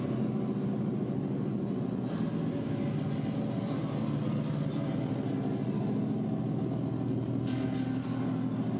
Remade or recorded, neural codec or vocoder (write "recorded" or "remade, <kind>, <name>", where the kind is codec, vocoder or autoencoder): recorded